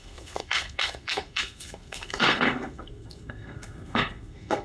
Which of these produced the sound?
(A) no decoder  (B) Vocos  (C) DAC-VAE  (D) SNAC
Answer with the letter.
D